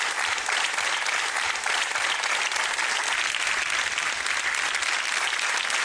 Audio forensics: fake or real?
real